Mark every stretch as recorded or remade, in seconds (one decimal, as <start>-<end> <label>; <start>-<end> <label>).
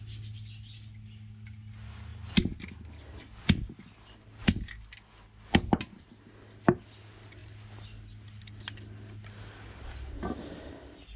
0.0-11.2 recorded